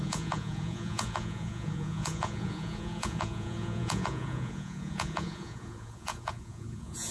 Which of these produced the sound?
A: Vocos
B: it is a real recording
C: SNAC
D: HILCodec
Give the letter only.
A